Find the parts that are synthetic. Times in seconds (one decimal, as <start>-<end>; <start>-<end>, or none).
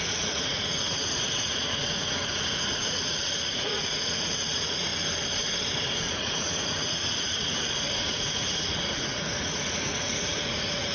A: 0.0-4.9; 6.0-10.9